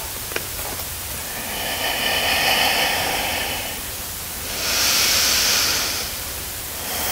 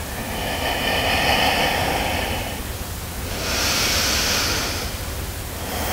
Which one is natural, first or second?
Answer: second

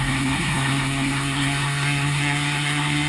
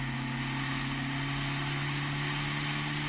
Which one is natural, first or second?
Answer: second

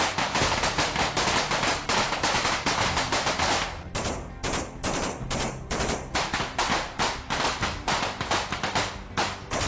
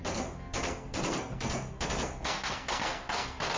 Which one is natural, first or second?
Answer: first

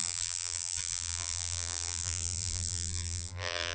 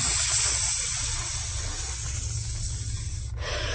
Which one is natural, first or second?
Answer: second